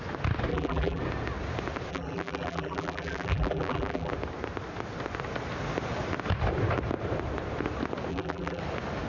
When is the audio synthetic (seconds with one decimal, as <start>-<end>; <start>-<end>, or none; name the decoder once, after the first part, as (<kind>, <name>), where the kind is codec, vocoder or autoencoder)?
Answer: 0.5-1.0 (vocoder, BigVGAN v2); 1.9-4.1; 8.1-8.6

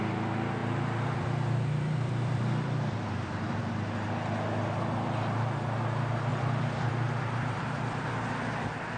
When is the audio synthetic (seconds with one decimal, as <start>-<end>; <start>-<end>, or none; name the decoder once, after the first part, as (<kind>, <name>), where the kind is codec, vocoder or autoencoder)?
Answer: 0.6-3.6 (vocoder, BigVGAN v2); 6.3-8.1

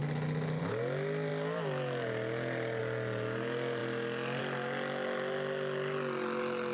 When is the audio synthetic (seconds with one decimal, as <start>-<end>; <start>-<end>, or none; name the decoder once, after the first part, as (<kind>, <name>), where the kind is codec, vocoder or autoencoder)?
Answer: none

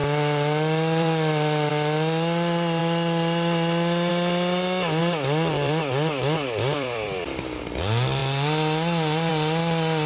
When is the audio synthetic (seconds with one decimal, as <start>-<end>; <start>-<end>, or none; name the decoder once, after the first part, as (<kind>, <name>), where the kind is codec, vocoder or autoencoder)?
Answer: 0.0-1.7 (vocoder, BigVGAN v2); 5.0-7.6

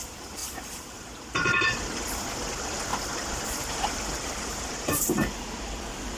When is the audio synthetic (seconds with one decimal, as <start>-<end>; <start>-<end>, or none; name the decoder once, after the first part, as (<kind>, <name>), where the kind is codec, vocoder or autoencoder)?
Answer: 0.4-1.1 (vocoder, BigVGAN v2); 2.9-5.1

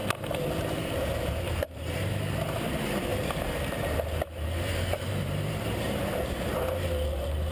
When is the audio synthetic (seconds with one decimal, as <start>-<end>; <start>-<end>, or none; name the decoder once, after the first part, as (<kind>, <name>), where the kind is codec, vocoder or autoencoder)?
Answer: 1.4-7.5 (vocoder, BigVGAN v2)

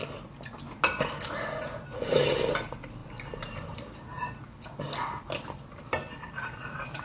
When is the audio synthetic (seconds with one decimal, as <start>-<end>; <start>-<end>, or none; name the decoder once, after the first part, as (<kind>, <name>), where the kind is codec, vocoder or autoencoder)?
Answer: 3.0-5.5 (vocoder, BigVGAN v2)

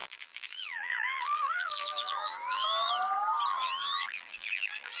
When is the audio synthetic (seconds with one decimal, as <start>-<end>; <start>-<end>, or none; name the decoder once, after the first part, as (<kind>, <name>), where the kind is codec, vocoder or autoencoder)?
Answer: 0.0-2.9 (vocoder, BigVGAN v2); 3.5-5.0